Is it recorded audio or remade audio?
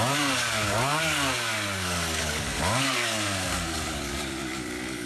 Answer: remade